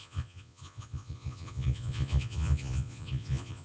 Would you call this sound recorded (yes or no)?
no